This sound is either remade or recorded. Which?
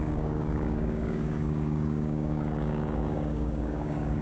remade